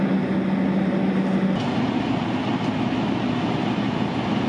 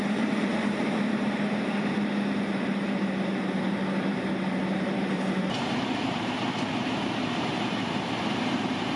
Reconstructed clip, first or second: second